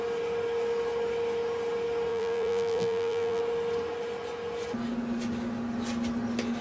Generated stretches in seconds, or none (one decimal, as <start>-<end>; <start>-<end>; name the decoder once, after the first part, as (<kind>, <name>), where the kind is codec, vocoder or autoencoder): 2.1-3.4 (vocoder, BigVGAN v2)